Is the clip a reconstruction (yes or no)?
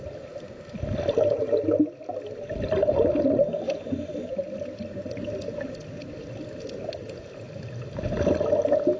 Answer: no